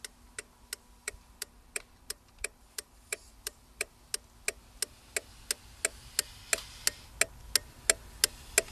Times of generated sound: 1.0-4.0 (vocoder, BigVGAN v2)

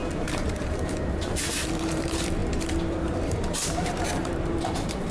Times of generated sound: 0.0-5.1 (vocoder, BigVGAN v2)

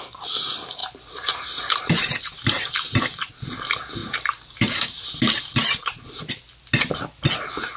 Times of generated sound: 0.8-3.3 (vocoder, BigVGAN v2); 4.0-6.3